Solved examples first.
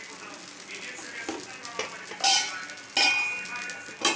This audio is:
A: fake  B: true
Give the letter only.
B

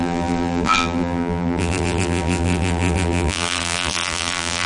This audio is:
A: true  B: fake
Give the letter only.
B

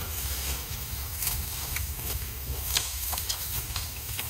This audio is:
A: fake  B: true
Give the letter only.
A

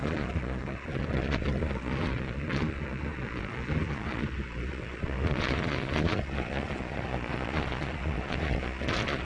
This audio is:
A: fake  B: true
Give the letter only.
A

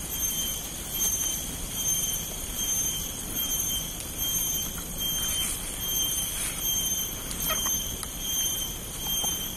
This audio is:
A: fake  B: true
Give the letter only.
A